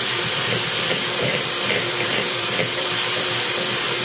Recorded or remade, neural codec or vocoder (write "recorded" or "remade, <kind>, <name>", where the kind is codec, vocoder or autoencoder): remade, vocoder, BigVGAN v2